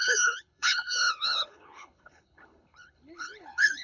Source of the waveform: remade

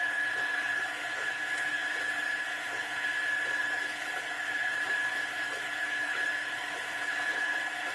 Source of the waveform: remade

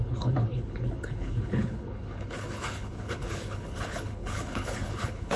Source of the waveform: remade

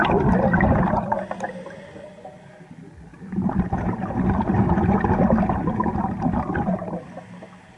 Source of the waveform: recorded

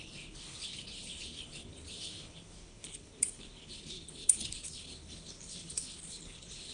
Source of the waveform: remade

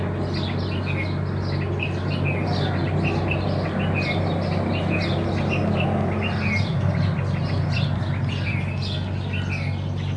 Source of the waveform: recorded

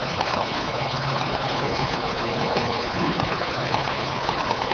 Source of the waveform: remade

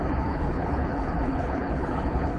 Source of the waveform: remade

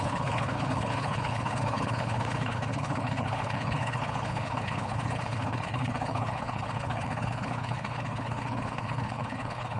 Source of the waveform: remade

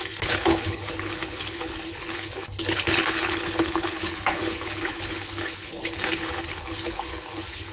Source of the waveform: remade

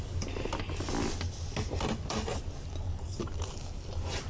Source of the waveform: recorded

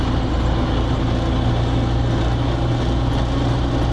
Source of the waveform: recorded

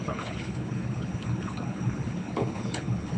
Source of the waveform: remade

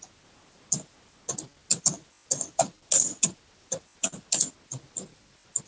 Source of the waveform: recorded